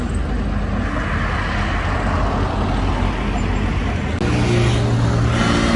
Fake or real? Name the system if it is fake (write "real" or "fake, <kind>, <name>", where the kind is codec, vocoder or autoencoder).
real